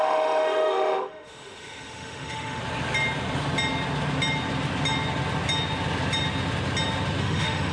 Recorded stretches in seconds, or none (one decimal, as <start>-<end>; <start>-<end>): 2.6-7.2